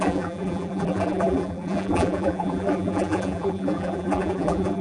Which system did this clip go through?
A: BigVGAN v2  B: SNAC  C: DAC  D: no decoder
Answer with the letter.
A